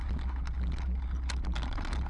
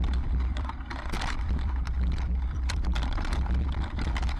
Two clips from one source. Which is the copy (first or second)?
second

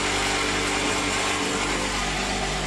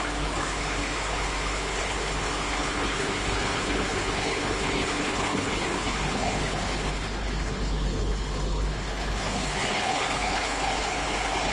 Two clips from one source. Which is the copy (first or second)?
second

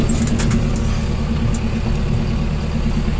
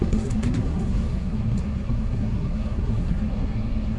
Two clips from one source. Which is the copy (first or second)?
second